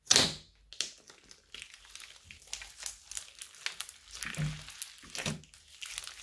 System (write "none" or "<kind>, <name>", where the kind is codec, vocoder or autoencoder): none